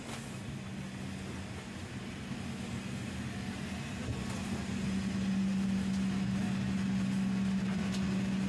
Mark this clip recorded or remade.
recorded